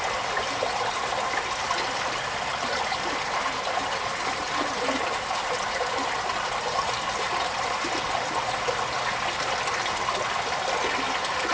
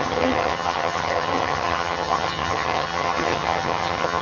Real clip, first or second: first